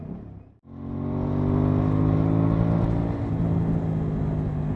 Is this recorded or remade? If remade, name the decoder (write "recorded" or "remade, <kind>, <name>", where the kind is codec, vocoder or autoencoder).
recorded